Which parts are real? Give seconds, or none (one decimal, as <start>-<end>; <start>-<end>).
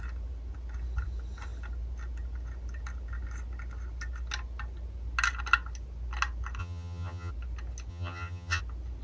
0.0-6.6; 7.3-7.9; 8.6-9.0